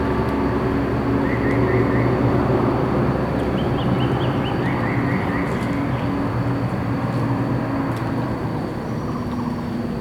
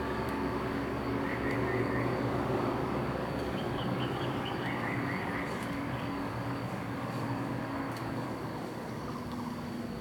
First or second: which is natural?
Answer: first